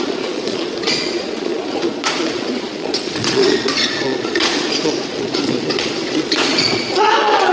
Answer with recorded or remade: remade